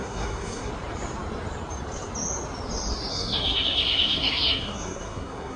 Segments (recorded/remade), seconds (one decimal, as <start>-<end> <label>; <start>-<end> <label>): 0.0-0.7 remade; 0.7-3.1 recorded; 3.1-5.6 remade